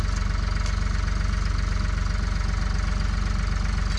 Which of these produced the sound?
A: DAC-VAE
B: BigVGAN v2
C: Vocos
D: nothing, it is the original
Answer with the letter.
D